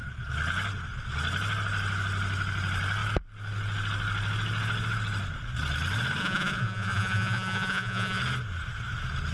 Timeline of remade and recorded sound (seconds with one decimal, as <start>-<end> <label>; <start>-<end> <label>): 0.0-6.2 recorded; 6.2-8.2 remade; 8.2-9.3 recorded